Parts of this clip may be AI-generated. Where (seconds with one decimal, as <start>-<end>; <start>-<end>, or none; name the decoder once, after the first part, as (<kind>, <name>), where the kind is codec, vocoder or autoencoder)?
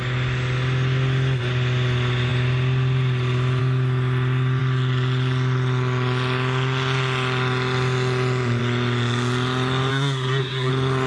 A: 9.9-10.7 (codec, SNAC)